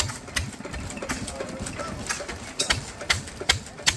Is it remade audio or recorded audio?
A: recorded